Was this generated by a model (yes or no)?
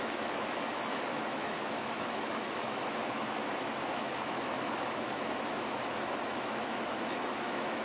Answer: yes